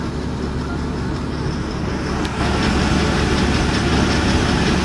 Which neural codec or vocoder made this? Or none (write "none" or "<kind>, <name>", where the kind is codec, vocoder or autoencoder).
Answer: none